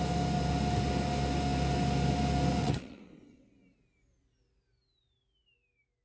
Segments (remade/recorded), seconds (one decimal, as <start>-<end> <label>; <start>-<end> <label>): 0.0-2.6 recorded; 2.6-3.5 remade; 3.5-6.0 recorded